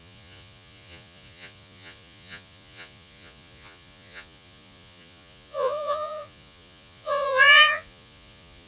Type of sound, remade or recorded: remade